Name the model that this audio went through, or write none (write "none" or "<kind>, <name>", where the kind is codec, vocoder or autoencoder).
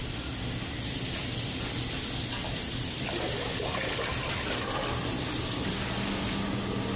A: none